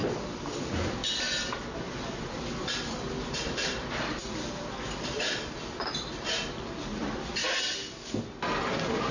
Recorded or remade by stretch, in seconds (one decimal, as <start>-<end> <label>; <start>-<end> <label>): 0.0-1.0 remade; 1.0-1.5 recorded; 1.5-6.9 remade; 6.9-9.1 recorded